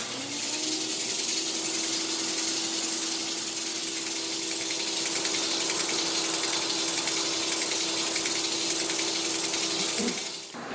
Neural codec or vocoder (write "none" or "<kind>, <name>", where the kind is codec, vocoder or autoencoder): none